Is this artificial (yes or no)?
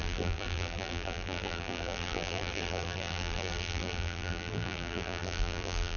yes